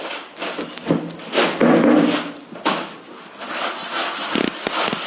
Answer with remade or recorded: recorded